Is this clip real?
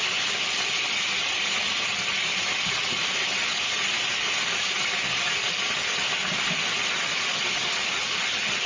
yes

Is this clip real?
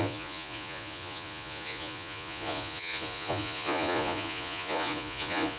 no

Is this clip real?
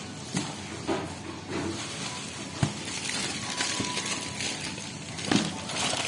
yes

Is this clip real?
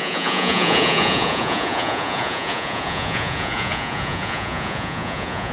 no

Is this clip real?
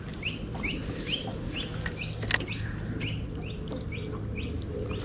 yes